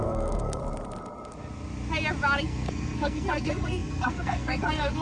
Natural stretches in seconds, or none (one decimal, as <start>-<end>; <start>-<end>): 0.6-2.4